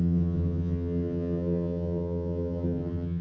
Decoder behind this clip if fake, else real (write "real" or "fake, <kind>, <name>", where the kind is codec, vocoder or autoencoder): fake, vocoder, HiFi-GAN